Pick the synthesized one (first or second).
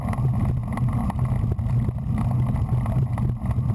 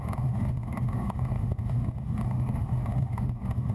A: second